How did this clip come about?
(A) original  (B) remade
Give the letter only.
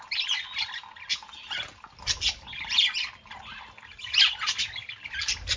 A